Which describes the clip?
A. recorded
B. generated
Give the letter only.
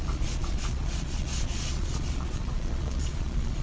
B